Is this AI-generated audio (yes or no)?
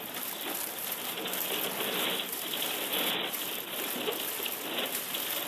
no